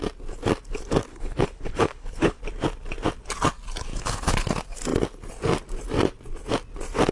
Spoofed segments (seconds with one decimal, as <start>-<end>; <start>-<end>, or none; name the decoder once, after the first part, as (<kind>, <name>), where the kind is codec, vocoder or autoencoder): 1.1-2.4 (codec, HILCodec); 3.9-4.5